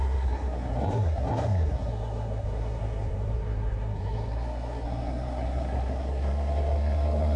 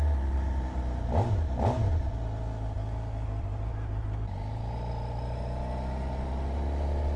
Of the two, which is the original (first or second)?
second